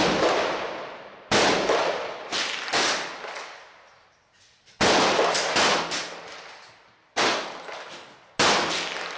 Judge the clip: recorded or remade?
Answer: recorded